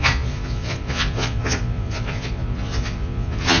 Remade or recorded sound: remade